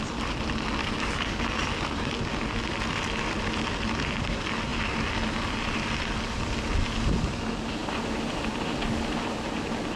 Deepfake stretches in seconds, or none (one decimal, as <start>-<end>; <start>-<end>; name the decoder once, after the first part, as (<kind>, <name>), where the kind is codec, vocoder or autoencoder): 0.8-1.4 (codec, DAC)